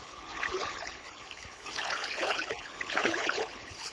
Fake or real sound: fake